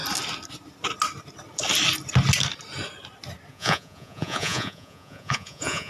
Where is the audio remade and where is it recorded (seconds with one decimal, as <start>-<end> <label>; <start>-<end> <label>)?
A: 0.0-3.5 recorded; 3.5-5.9 remade

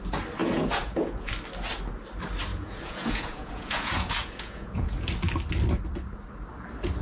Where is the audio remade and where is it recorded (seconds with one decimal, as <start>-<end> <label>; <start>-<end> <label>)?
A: 0.0-0.4 recorded; 0.4-1.3 remade; 1.3-2.5 recorded; 2.5-5.1 remade; 5.1-7.0 recorded

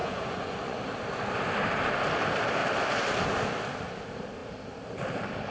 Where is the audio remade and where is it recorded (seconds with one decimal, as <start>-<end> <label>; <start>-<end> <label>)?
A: 0.0-0.8 remade; 0.8-5.5 recorded

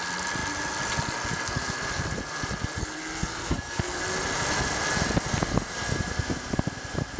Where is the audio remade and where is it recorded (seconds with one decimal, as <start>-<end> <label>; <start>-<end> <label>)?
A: 0.0-2.8 recorded; 2.8-4.0 remade; 4.0-7.2 recorded